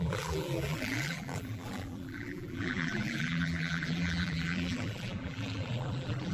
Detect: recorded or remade remade